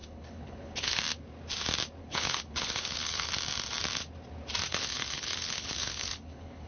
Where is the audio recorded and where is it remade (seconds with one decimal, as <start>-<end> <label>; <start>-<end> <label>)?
0.0-1.0 remade; 1.0-2.0 recorded; 2.0-3.3 remade; 3.3-4.7 recorded; 4.7-6.7 remade